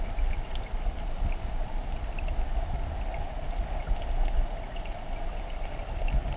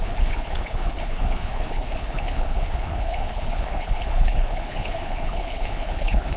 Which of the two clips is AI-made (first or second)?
second